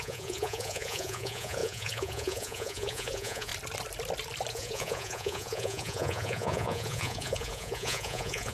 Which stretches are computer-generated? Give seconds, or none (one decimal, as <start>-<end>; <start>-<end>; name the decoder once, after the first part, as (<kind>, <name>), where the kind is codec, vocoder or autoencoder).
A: 0.0-3.5 (vocoder, Vocos); 4.5-8.5